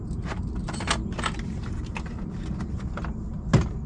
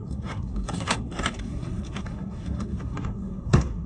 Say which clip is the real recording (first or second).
first